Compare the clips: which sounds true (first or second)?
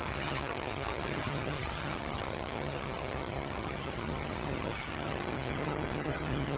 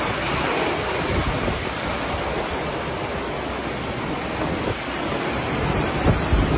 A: second